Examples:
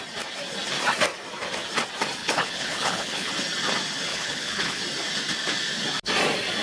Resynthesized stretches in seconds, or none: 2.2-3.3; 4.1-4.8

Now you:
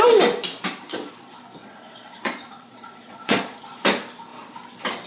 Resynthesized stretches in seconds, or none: 1.6-3.8